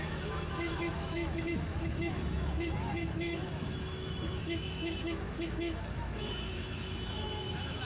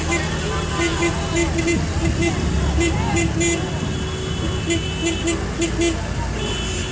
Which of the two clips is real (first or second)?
second